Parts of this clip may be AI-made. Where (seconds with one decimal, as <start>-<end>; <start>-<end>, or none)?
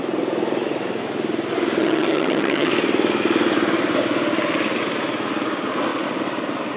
1.8-2.7